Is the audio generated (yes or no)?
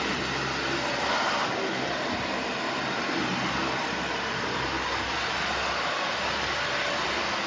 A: no